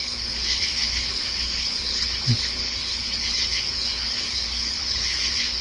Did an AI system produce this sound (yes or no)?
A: yes